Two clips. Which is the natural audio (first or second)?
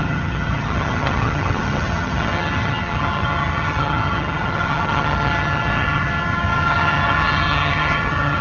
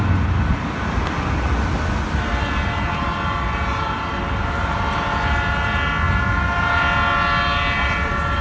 second